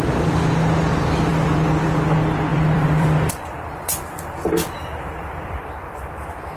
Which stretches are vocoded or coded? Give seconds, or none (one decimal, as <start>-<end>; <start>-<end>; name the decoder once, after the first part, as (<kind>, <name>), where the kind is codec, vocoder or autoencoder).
1.3-2.0 (vocoder, BigVGAN v2); 2.5-6.1